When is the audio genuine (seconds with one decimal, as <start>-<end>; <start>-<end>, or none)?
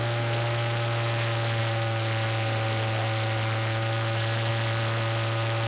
0.0-5.7